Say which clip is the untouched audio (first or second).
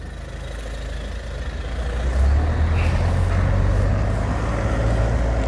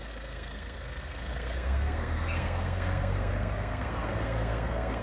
first